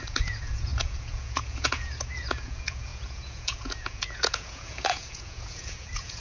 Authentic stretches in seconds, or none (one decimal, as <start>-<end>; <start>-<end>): none